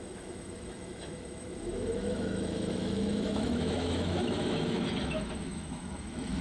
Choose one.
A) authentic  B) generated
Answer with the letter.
B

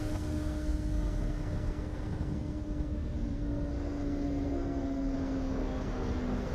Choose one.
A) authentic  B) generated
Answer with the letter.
B